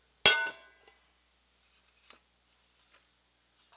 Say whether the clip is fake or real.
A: real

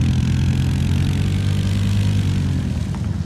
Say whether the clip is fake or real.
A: real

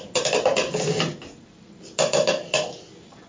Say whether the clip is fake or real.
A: real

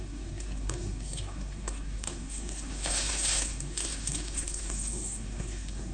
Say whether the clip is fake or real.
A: fake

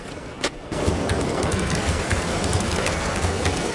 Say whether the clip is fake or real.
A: fake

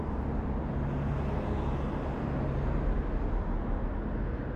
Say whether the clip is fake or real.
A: real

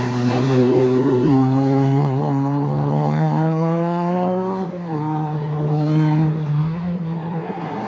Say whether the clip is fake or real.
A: fake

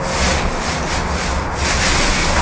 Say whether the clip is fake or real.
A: real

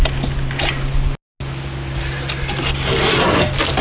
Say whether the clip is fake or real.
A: real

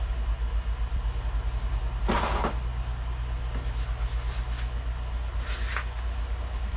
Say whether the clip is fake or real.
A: real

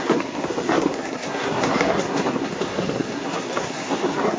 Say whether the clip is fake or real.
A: fake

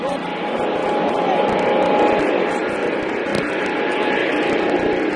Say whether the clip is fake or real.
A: real